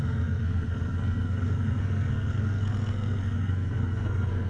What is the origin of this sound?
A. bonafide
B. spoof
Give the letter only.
B